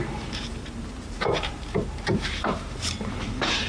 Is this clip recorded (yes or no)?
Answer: no